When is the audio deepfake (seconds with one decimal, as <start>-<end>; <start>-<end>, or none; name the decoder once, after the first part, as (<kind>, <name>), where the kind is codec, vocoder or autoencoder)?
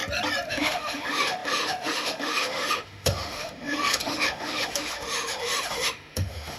0.5-6.6 (autoencoder, DAC-VAE)